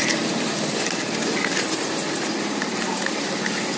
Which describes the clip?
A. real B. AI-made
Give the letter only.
A